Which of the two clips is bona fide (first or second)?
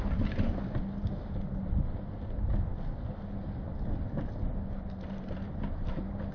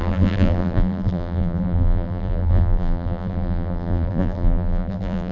first